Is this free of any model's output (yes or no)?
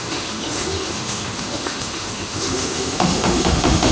no